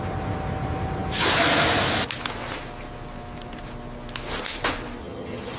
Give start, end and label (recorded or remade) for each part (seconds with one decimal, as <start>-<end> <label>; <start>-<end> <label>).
0.0-5.0 recorded; 5.0-5.6 remade